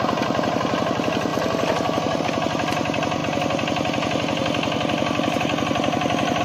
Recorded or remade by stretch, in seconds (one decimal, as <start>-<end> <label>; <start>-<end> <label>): 0.0-6.4 recorded